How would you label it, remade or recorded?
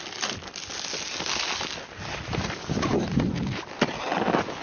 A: recorded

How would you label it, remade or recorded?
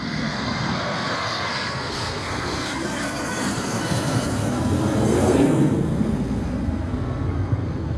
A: remade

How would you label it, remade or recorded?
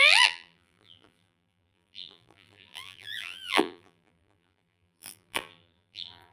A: remade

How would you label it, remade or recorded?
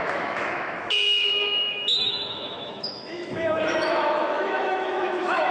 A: remade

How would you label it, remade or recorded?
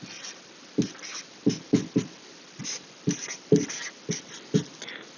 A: recorded